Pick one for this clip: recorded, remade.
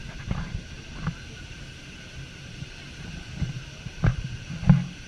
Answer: remade